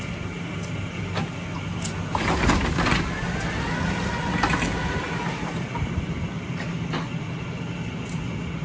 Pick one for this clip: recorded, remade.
recorded